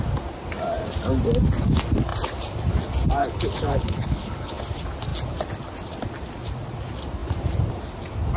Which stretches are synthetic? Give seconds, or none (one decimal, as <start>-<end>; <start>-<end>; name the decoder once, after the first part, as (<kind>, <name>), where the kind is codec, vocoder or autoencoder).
3.2-4.6 (codec, HILCodec)